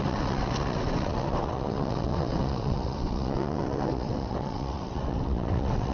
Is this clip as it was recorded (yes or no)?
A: no